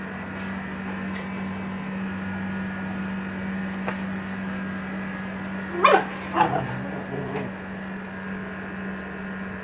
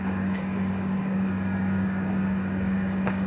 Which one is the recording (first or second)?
first